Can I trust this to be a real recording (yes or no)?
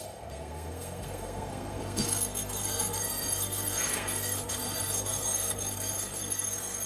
no